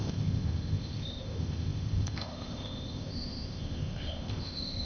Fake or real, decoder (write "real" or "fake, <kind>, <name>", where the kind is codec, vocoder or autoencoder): fake, codec, ZipCodec